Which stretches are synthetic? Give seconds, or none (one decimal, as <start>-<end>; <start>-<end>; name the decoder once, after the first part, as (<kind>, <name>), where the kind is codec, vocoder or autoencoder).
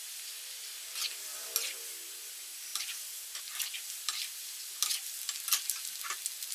none